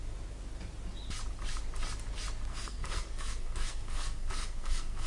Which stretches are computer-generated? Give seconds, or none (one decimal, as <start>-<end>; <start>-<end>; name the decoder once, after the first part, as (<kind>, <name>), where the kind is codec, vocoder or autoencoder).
2.5-5.1 (codec, SNAC)